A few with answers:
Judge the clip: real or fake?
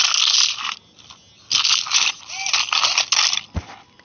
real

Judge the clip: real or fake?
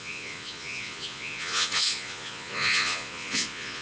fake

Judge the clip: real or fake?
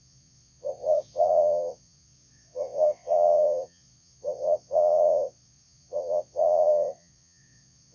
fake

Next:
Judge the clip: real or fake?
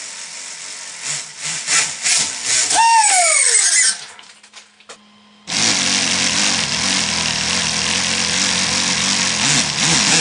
real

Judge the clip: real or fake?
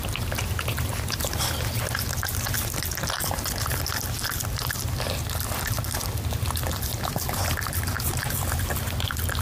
real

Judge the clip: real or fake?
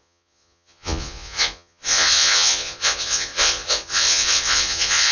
fake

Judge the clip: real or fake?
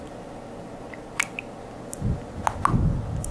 real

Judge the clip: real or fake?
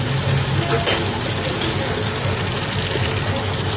real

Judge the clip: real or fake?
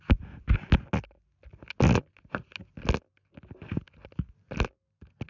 real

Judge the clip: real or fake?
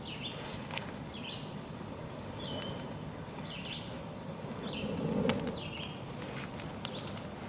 real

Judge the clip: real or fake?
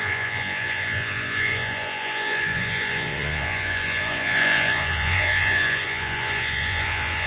fake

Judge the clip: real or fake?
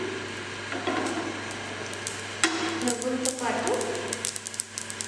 real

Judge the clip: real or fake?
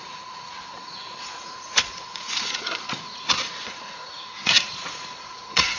fake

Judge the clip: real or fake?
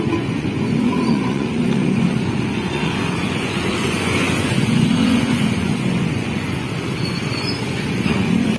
fake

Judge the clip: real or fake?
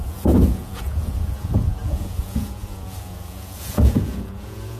fake